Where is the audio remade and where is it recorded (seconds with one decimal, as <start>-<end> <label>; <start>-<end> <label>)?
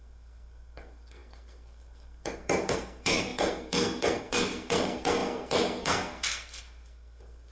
0.0-7.5 remade